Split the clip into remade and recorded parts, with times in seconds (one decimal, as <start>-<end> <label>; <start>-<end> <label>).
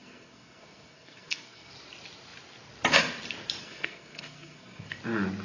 0.0-1.7 remade; 1.7-3.6 recorded; 3.6-5.0 remade; 5.0-5.4 recorded